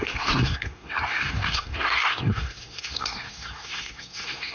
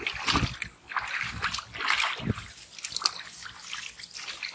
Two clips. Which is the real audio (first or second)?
second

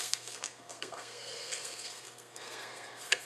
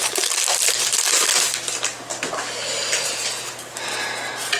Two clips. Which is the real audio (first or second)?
second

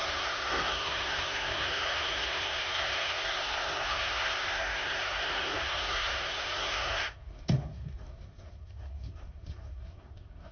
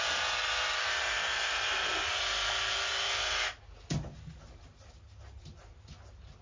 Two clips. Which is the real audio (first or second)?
second